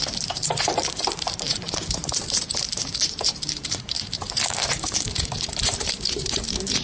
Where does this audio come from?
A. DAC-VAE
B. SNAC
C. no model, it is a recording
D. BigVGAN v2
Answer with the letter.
D